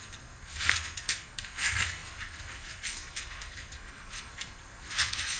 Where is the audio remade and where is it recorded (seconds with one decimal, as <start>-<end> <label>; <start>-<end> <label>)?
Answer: 0.0-5.4 remade